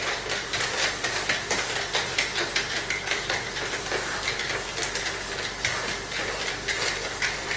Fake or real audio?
real